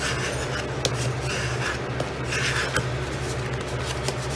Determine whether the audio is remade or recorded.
recorded